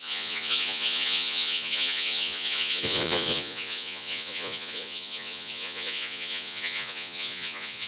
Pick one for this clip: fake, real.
fake